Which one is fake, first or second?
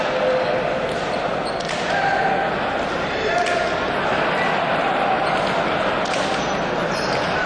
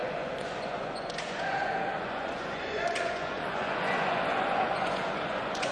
second